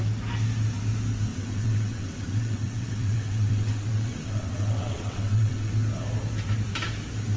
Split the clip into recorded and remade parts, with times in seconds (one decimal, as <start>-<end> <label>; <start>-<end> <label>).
0.0-1.3 recorded; 1.3-5.7 remade; 5.7-7.4 recorded